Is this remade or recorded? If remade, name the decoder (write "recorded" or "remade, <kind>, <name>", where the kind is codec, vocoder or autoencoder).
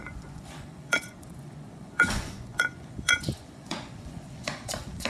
remade, vocoder, Vocos